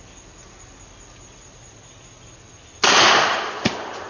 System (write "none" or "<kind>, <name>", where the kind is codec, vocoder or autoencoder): none